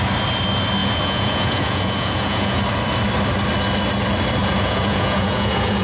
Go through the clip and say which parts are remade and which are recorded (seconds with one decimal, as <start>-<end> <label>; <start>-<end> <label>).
0.0-0.8 recorded; 0.8-2.6 remade; 2.6-4.4 recorded; 4.4-5.8 remade